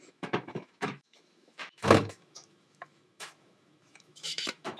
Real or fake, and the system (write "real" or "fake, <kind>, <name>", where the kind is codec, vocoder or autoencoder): fake, autoencoder, DAC-VAE